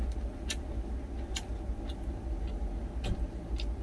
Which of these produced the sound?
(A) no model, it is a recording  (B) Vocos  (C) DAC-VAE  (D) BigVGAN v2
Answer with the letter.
A